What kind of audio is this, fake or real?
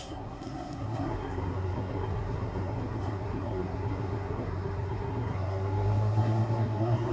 fake